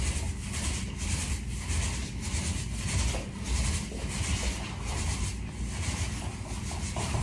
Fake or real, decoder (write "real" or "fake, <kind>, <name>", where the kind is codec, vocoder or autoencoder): real